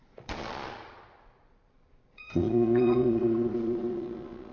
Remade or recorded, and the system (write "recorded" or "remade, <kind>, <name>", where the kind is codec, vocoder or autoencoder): remade, vocoder, Vocos